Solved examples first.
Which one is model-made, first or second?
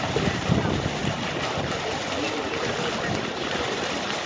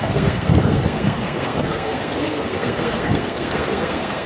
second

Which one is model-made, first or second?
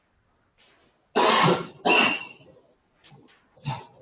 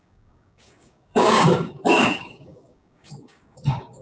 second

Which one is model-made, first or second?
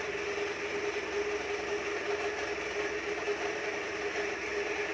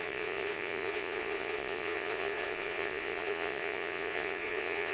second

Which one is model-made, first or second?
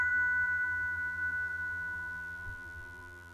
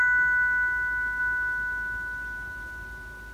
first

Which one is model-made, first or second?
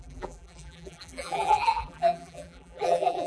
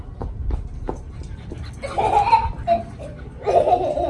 first